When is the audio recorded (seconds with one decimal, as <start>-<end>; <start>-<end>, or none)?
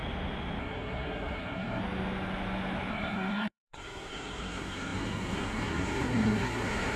0.0-0.6; 1.8-2.9